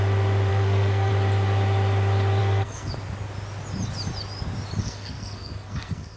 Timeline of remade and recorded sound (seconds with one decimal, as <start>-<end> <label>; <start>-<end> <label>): 0.0-0.5 recorded; 0.5-1.1 remade; 1.1-2.4 recorded; 2.4-2.9 remade; 2.9-4.8 recorded; 4.8-6.2 remade